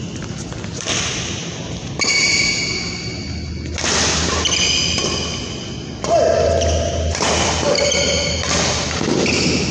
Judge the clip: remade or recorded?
recorded